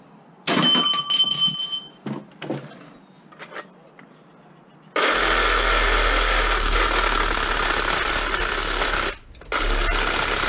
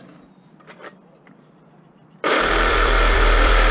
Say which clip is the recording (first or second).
first